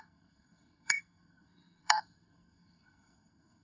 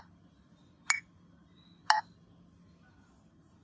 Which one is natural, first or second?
second